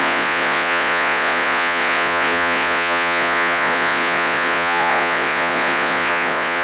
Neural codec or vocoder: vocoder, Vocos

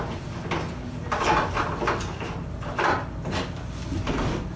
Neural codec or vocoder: none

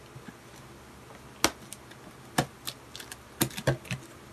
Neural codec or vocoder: none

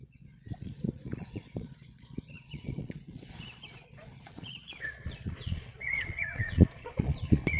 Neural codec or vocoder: vocoder, Vocos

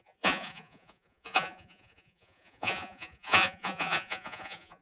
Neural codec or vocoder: vocoder, Vocos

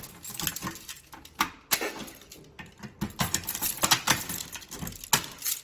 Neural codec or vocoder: none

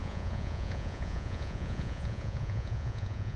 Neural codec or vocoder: vocoder, Vocos